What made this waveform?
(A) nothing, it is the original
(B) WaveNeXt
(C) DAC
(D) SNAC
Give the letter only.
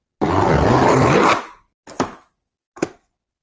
A